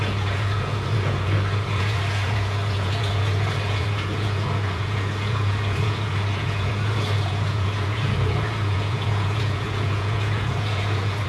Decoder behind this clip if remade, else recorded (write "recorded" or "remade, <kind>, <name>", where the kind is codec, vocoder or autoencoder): remade, vocoder, Vocos